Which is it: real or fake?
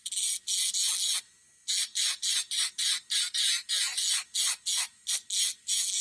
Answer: real